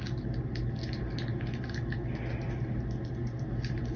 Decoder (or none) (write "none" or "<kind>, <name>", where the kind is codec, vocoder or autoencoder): none